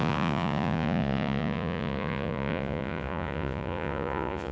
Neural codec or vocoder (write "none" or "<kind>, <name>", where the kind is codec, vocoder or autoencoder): vocoder, Vocos